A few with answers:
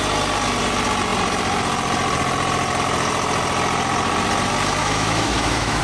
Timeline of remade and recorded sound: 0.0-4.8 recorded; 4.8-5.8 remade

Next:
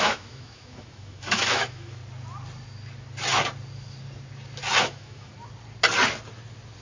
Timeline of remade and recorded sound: 0.0-2.0 remade; 2.0-4.8 recorded; 4.8-5.3 remade; 5.3-6.8 recorded

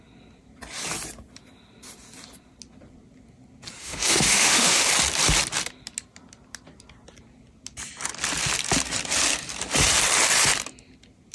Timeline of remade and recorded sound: 0.0-3.8 recorded; 3.8-4.9 remade; 4.9-11.3 recorded

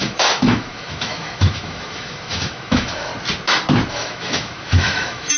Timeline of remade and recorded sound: 0.0-3.1 remade; 3.1-3.9 recorded; 3.9-5.4 remade

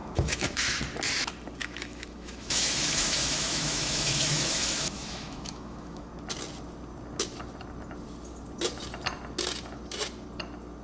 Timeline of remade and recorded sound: 0.0-0.8 remade; 0.8-1.6 recorded; 1.6-6.1 remade; 6.1-10.8 recorded

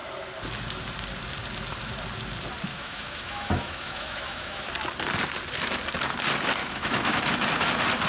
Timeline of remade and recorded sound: 0.0-2.7 recorded; 2.7-4.7 remade; 4.7-6.6 recorded; 6.6-7.2 remade; 7.2-8.1 recorded

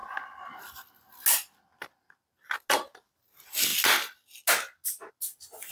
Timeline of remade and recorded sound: 0.0-5.7 recorded

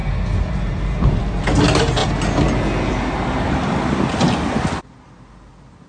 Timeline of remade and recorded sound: 0.0-5.9 recorded